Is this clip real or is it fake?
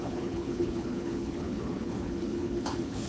fake